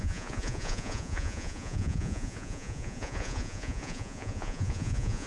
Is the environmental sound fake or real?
fake